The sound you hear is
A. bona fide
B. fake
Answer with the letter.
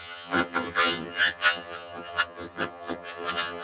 B